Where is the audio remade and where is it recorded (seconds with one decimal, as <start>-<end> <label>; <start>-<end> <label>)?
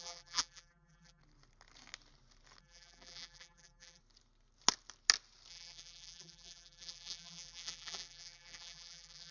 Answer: 0.0-1.2 remade; 1.2-2.6 recorded; 2.6-4.0 remade; 4.0-5.5 recorded; 5.5-9.3 remade